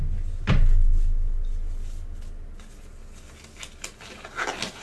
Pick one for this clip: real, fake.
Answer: real